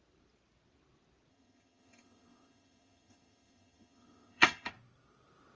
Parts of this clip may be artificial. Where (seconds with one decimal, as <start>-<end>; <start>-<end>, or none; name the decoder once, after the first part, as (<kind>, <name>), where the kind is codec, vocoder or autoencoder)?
1.3-4.7 (vocoder, HiFi-GAN)